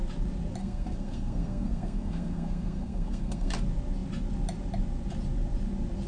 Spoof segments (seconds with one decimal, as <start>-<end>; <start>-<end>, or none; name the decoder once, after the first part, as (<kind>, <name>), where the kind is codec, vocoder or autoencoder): 0.6-3.5 (codec, SNAC)